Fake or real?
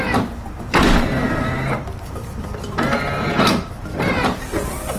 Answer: fake